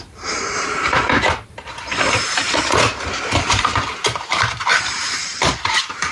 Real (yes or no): no